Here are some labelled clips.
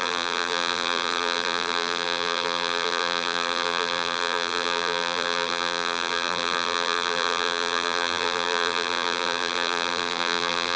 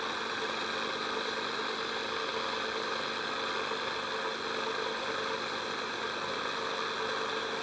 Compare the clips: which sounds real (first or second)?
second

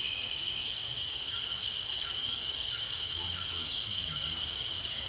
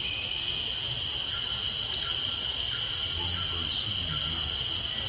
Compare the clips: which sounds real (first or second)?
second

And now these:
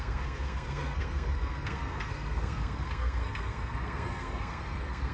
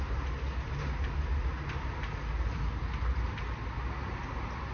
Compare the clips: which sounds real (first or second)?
second